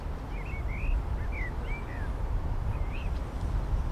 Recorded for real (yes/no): yes